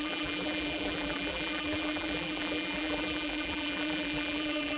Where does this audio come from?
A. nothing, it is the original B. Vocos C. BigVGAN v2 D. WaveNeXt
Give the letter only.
C